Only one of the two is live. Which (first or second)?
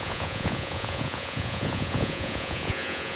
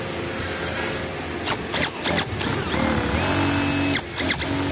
second